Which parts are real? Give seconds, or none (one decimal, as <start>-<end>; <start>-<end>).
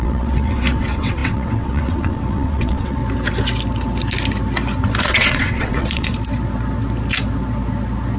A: 3.0-5.0; 6.1-8.2